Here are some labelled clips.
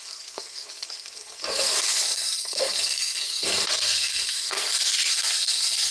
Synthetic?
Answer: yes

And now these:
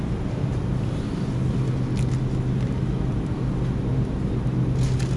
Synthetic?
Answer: no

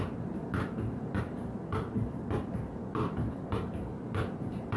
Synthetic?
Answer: yes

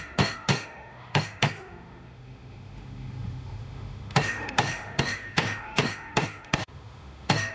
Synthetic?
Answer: yes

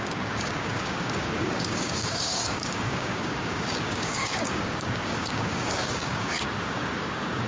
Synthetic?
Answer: yes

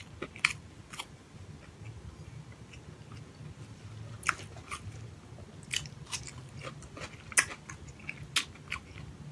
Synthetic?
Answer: no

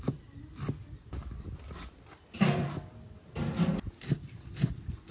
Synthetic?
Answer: no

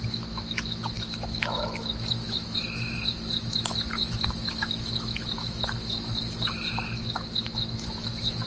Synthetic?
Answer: yes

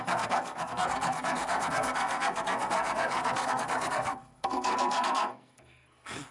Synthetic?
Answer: yes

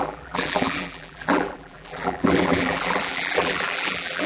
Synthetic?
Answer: yes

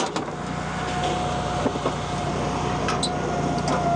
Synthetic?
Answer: no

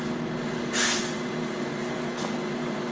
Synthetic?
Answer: no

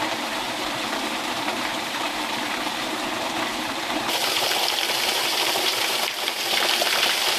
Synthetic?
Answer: yes